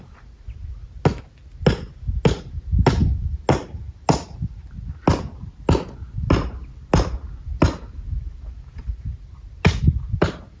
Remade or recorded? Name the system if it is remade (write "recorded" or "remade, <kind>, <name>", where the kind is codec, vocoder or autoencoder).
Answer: recorded